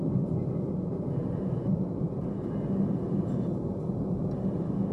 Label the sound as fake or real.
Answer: real